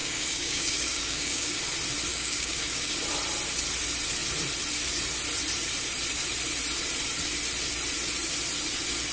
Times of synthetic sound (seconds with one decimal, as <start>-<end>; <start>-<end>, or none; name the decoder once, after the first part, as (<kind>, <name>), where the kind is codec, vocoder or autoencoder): 0.0-1.6 (codec, DAC); 2.1-2.9